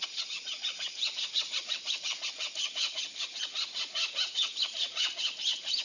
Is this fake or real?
fake